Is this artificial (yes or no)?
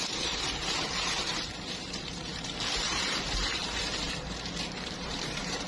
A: yes